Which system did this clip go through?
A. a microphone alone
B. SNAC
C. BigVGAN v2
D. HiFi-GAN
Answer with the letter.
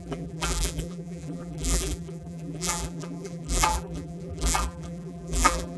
C